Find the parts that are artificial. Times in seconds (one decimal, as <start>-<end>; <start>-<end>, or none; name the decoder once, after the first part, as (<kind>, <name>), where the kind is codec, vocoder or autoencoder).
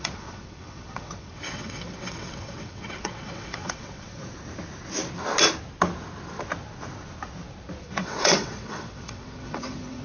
0.0-4.2 (vocoder, WaveNeXt); 7.8-10.0